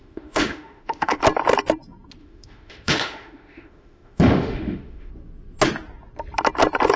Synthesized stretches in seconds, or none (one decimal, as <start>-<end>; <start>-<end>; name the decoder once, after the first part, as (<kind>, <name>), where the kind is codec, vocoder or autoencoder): 0.0-1.2 (autoencoder, DAC-VAE); 2.2-5.1